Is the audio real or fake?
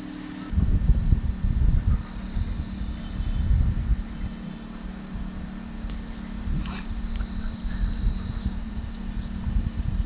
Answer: real